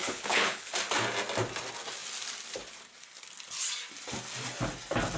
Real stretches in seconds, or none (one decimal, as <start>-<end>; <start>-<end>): 0.7-5.2